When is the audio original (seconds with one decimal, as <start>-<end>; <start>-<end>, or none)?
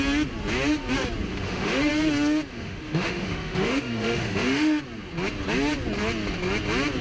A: 0.0-1.3; 1.9-2.5; 4.8-7.0